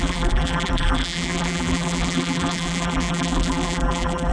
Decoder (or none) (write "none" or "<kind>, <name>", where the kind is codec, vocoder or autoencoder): vocoder, BigVGAN v2